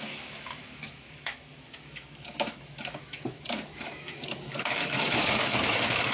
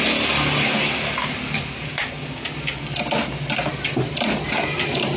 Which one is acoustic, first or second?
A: second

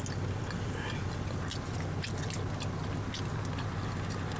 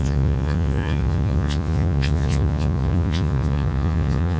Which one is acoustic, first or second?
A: first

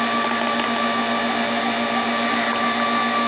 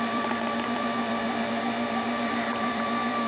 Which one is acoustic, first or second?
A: first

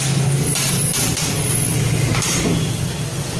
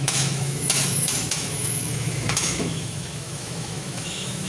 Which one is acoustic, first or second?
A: first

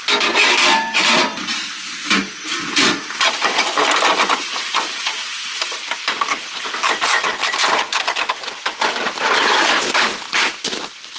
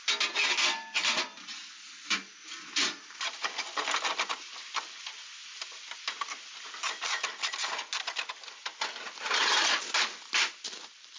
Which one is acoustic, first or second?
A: second